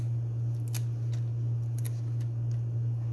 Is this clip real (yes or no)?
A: yes